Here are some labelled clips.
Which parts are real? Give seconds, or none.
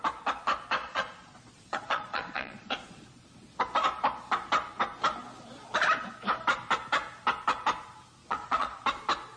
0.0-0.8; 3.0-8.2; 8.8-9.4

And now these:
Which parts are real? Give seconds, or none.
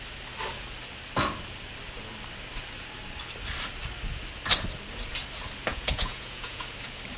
0.0-5.7; 6.7-7.2